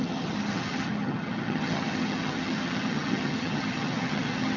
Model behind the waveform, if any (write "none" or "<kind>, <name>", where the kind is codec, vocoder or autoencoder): vocoder, HiFi-GAN